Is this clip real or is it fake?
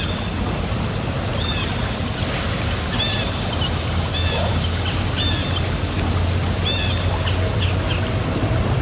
real